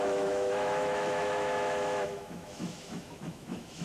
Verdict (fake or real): fake